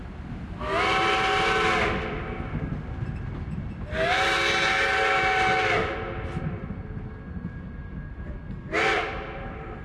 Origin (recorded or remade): recorded